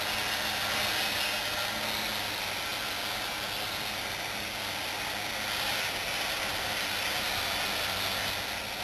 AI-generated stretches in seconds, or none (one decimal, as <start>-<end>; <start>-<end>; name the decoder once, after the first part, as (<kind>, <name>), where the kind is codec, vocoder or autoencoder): none